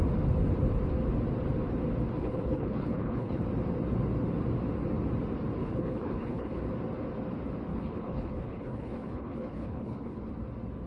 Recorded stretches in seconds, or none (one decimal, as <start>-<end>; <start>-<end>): 0.0-2.2; 3.4-5.6; 6.6-7.7; 10.3-10.9